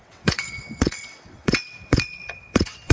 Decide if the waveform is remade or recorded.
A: remade